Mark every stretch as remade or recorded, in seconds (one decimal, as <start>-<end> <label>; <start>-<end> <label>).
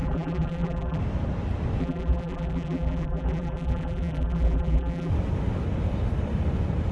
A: 0.0-1.0 remade; 1.0-1.8 recorded; 1.8-5.1 remade; 5.1-6.9 recorded